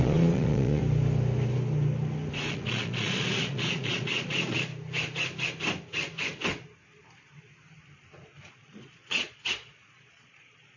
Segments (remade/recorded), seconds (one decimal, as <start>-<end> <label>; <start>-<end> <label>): 0.0-0.8 remade; 0.8-2.5 recorded; 2.5-4.7 remade; 4.7-8.5 recorded; 8.5-10.8 remade